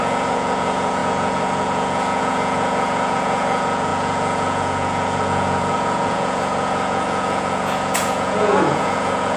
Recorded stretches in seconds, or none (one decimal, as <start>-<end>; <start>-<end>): none

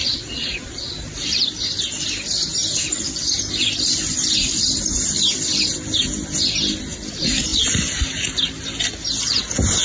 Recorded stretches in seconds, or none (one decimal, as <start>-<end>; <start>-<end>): 0.9-9.8

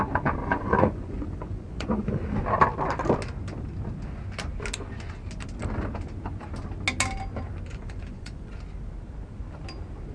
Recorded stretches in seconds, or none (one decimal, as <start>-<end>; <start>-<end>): 0.0-0.4; 2.1-7.7; 8.5-10.1

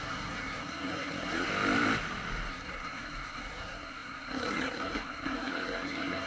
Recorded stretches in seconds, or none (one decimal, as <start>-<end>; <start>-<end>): 1.5-2.5

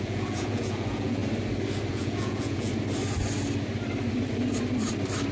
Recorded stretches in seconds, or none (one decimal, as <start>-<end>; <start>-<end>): 1.2-1.9; 2.7-5.3

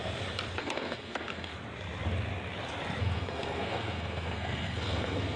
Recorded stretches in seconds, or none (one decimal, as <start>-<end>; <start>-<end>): 0.0-0.6; 1.5-3.0

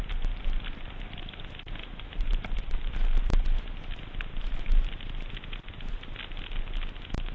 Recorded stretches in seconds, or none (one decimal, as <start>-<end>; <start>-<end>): 0.0-1.8; 3.0-7.3

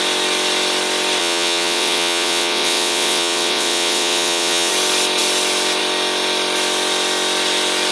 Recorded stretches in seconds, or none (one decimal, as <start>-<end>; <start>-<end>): 0.0-1.2; 4.7-7.9